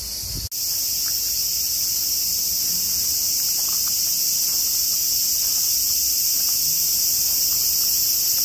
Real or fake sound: real